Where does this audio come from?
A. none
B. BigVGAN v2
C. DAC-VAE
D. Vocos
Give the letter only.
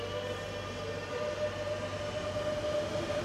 A